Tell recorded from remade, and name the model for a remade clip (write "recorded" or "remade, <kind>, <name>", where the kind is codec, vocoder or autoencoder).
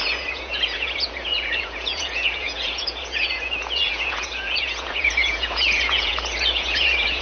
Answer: remade, vocoder, Vocos